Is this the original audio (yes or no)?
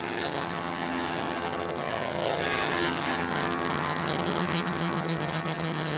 no